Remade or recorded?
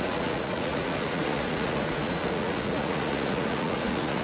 remade